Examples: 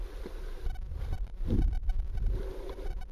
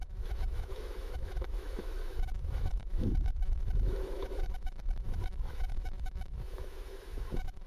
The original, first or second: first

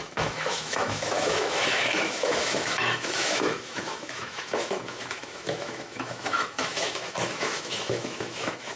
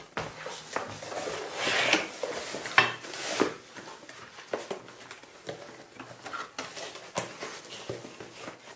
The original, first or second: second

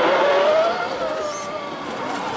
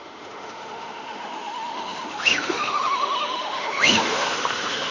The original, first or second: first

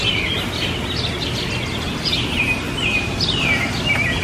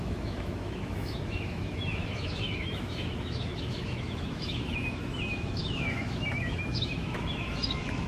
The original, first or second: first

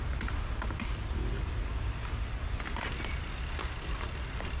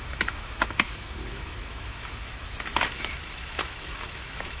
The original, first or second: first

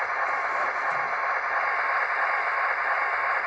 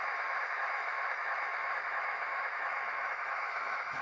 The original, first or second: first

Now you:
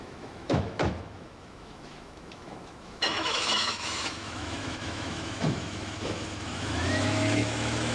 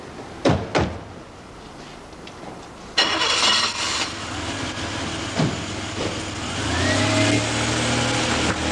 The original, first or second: second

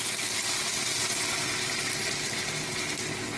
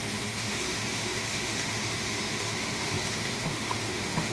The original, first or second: first